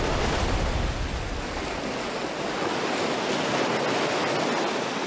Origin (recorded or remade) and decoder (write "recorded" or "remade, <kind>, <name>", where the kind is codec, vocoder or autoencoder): recorded